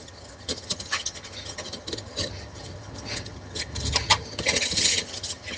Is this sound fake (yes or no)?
yes